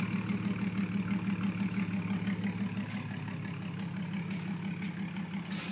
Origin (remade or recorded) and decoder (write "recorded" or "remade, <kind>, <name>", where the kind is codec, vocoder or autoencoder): recorded